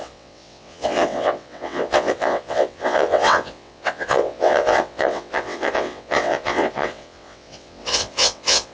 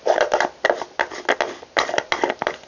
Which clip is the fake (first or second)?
first